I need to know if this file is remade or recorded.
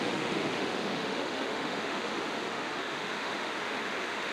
remade